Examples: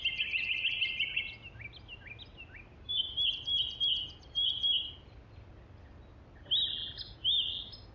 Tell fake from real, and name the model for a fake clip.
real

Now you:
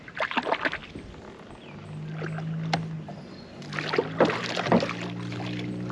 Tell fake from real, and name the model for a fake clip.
real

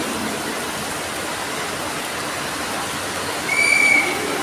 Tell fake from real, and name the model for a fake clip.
real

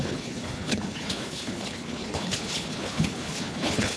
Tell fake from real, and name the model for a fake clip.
fake, codec, HILCodec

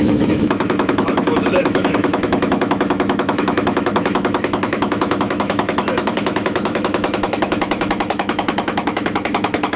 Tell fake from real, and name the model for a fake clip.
fake, autoencoder, DAC-VAE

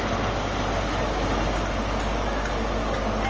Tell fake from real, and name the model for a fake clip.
real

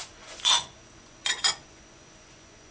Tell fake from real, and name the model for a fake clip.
fake, vocoder, Vocos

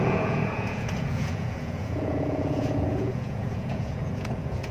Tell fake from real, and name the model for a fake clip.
fake, vocoder, Vocos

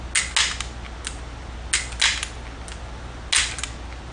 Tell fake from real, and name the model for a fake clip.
real